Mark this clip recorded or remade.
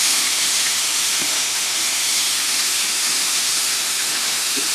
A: remade